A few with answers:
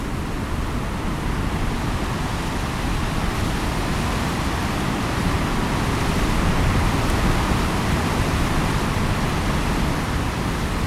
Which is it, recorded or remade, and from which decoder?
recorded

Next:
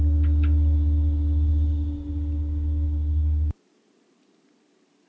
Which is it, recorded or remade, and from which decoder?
recorded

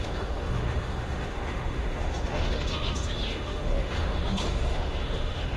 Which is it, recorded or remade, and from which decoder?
remade, autoencoder, DAC-VAE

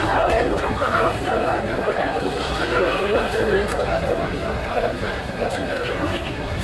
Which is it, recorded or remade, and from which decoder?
remade, codec, SNAC